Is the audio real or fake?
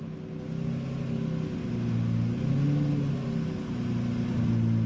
real